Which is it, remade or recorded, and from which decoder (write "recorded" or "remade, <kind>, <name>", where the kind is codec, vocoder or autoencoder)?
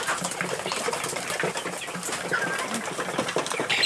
recorded